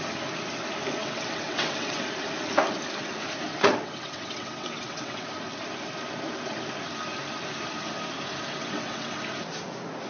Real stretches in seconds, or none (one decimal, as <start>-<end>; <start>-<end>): 0.0-1.0; 2.0-3.5; 5.3-8.6; 9.2-10.1